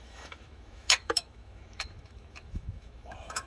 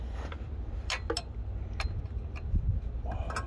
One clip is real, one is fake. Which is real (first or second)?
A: second